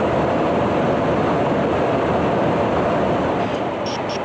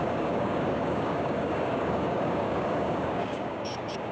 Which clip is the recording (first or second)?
first